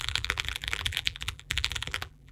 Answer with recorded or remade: remade